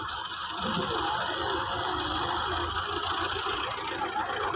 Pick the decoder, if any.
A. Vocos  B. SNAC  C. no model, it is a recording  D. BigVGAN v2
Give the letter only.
D